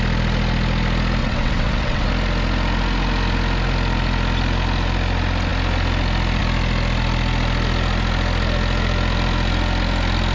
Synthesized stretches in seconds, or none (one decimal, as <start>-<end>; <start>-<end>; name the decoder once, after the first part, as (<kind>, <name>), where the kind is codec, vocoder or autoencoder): 1.2-2.1 (vocoder, WaveNeXt)